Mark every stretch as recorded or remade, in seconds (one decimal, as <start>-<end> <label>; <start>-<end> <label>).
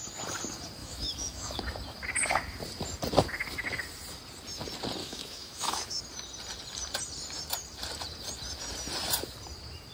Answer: 0.0-0.8 recorded; 0.8-1.6 remade; 1.6-5.0 recorded; 5.0-6.0 remade; 6.0-9.9 recorded